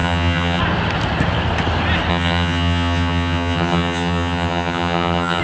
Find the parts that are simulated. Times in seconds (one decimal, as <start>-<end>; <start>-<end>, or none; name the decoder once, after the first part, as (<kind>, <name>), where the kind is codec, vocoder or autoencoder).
0.0-0.6 (vocoder, HiFi-GAN); 2.1-5.4